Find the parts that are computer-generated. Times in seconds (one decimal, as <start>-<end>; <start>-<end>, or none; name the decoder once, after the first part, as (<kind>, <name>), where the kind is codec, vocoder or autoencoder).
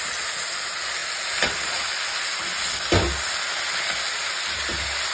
none